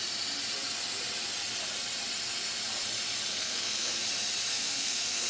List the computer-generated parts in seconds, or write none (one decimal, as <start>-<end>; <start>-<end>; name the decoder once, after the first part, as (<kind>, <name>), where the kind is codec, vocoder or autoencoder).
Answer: 3.3-4.0 (codec, SNAC); 4.5-5.3